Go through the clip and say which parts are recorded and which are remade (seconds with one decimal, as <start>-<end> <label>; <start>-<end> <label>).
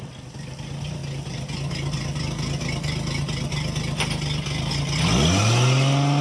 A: 0.0-6.2 recorded